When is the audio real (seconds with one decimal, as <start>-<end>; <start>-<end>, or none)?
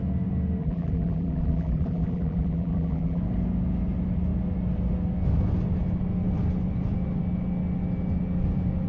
0.0-0.6; 3.2-8.9